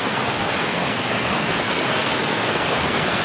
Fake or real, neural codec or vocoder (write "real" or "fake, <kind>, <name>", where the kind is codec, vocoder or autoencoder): fake, codec, SNAC